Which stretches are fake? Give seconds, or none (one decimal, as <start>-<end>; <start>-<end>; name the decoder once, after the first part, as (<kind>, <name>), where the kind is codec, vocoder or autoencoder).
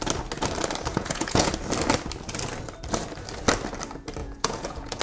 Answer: 0.9-1.5 (vocoder, Vocos); 4.2-5.0